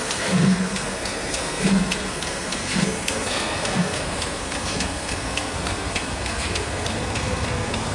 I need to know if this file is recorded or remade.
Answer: remade